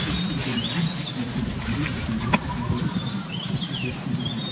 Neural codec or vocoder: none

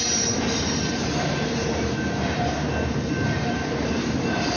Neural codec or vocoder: vocoder, BigVGAN v2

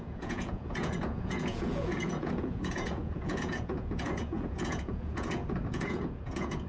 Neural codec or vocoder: vocoder, Vocos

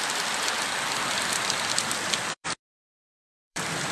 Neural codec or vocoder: vocoder, BigVGAN v2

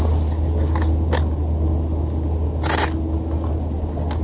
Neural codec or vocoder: none